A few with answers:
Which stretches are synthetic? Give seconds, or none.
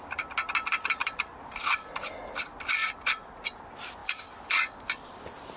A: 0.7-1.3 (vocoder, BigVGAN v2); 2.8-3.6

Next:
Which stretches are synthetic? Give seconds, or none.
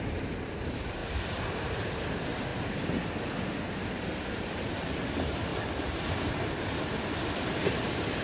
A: 0.0-1.0 (vocoder, BigVGAN v2); 1.7-5.5; 7.6-8.2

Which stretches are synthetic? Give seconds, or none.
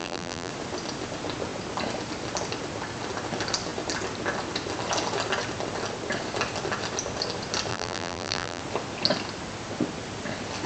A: 0.0-0.5 (vocoder, BigVGAN v2); 7.7-8.6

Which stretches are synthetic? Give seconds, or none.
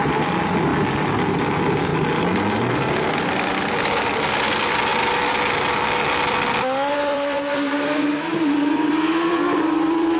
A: 0.0-1.9 (vocoder, BigVGAN v2); 2.7-4.9; 6.9-10.2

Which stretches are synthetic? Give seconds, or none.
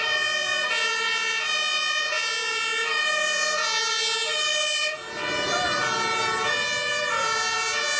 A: none